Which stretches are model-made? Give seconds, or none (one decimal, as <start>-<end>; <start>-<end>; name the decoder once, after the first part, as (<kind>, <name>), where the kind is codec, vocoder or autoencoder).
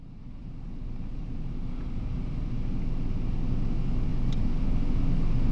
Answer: 0.4-2.5 (vocoder, BigVGAN v2)